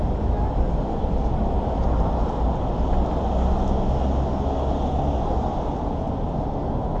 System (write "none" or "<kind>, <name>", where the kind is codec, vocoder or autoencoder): none